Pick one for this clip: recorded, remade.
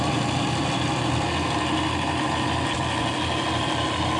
recorded